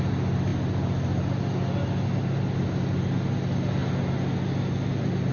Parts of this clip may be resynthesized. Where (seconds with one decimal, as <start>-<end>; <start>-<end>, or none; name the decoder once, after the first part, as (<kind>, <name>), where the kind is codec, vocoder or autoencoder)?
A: none